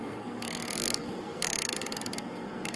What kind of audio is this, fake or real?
fake